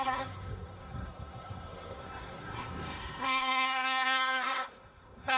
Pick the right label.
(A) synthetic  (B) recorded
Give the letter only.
A